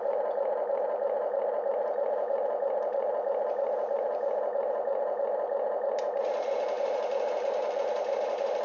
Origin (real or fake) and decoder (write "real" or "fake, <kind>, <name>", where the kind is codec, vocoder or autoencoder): fake, vocoder, BigVGAN v2